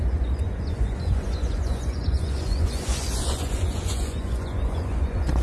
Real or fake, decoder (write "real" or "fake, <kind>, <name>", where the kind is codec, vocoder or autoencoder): fake, vocoder, Vocos